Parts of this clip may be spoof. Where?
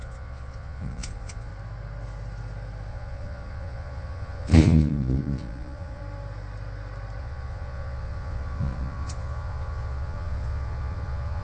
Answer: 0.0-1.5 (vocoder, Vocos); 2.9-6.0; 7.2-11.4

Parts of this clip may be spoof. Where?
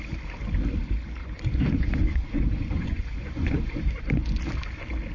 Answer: 1.2-4.3 (vocoder, Vocos)